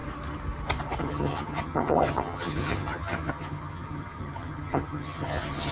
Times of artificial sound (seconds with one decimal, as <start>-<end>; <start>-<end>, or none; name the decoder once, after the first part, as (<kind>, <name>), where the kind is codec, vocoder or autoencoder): 1.0-5.7 (vocoder, HiFi-GAN)